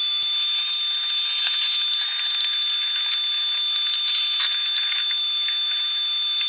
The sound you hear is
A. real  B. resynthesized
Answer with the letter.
A